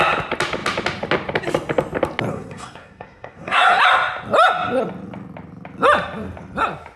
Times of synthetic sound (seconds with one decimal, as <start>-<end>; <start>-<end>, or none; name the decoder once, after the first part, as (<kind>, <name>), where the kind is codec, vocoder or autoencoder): 2.3-3.8 (codec, SNAC)